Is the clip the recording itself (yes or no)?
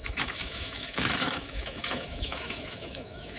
no